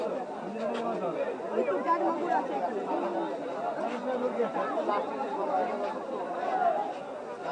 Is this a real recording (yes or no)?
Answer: yes